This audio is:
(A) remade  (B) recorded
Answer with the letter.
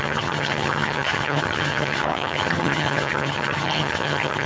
A